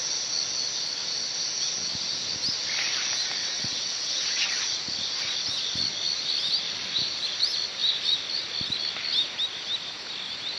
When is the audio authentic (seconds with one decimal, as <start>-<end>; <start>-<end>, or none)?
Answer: 0.0-3.4; 4.5-10.6